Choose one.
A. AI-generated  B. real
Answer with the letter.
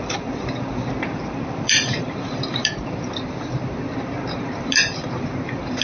A